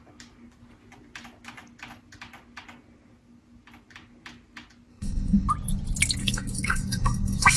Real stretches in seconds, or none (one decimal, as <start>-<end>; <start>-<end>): 0.0-4.9; 5.5-6.2